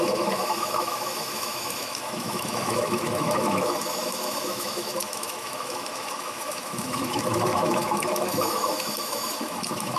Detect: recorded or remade remade